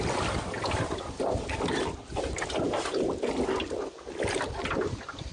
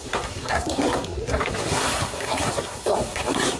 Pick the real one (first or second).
first